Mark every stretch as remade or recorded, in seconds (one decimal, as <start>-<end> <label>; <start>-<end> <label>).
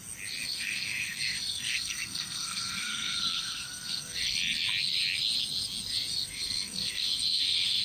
0.0-0.4 recorded; 0.4-4.2 remade; 4.2-6.1 recorded; 6.1-7.8 remade